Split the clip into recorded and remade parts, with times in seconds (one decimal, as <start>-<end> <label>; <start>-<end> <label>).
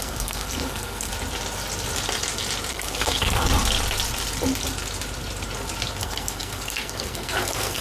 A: 0.0-1.1 remade; 1.1-2.7 recorded; 2.7-3.5 remade; 3.5-6.0 recorded; 6.0-7.8 remade